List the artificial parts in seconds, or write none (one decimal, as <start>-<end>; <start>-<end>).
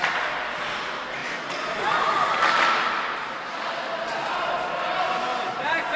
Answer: none